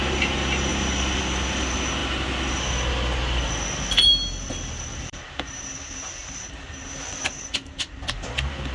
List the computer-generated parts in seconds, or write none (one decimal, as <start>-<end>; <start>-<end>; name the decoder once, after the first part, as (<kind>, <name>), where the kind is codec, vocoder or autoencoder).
0.7-1.2 (vocoder, BigVGAN v2); 4.9-7.7